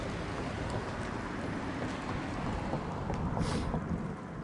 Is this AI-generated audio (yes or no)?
no